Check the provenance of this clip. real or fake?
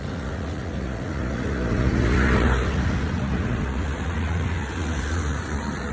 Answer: fake